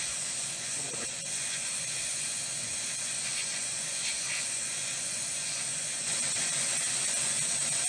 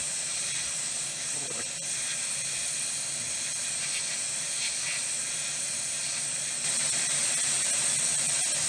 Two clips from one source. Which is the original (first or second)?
second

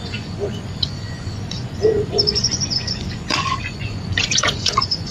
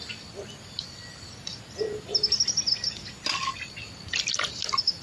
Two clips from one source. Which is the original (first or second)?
second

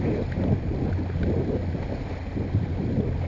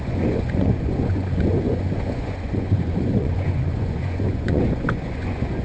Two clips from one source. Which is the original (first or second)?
first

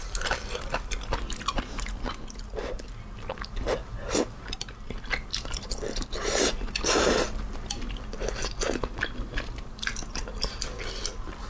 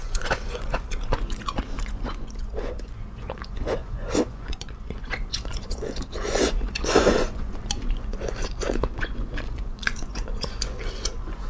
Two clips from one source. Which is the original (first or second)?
first